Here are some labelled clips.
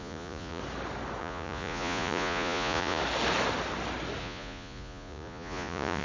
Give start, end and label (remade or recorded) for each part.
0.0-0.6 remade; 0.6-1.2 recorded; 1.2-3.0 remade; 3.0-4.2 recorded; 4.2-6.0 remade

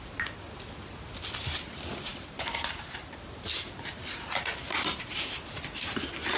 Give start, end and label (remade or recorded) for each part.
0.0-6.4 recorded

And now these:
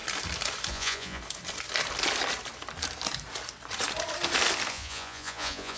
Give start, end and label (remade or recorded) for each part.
0.0-0.7 recorded; 0.7-1.2 remade; 1.2-4.7 recorded; 4.7-5.8 remade